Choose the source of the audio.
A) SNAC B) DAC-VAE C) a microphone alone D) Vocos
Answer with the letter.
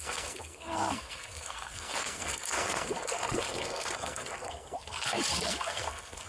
A